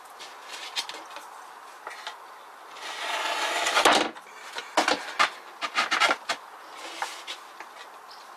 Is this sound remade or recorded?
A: recorded